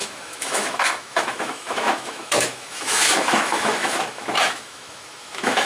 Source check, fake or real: fake